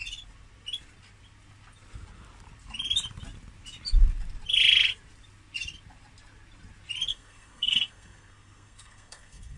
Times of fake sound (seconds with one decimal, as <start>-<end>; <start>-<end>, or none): 7.1-9.6